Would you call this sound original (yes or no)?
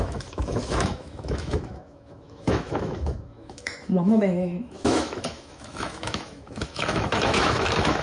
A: no